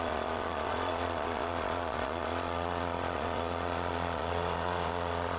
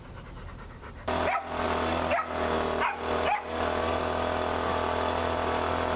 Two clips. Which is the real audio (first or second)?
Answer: second